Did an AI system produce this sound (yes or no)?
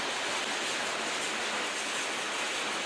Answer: no